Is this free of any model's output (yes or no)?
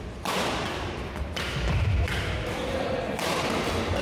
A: no